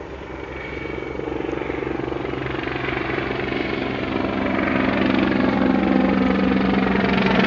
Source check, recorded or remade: recorded